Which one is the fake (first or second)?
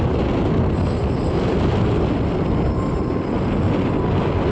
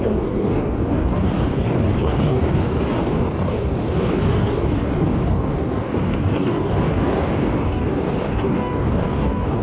second